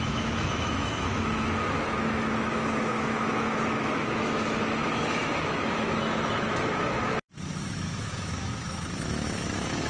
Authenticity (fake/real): fake